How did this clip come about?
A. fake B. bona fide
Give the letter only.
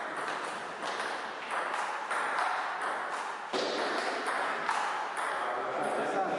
B